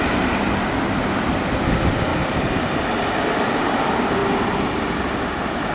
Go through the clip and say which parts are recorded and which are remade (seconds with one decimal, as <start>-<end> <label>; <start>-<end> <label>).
0.0-5.7 recorded